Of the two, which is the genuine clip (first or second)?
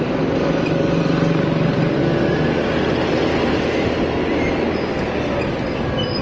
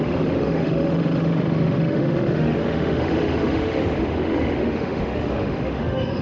first